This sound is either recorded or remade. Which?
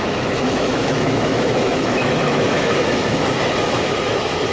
remade